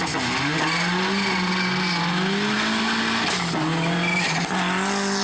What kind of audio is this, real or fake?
real